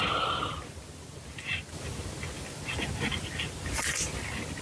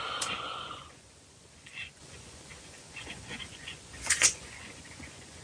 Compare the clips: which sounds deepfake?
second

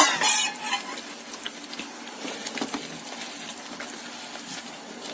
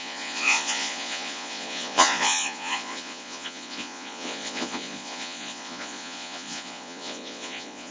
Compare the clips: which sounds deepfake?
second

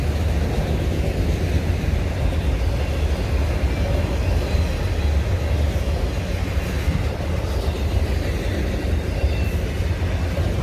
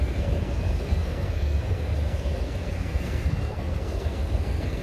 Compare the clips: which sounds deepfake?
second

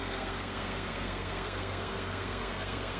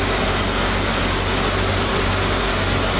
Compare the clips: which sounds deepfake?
first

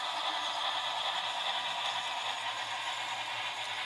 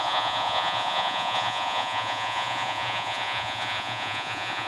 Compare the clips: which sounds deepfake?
second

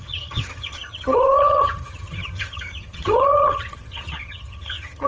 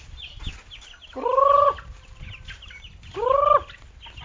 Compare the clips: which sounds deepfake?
first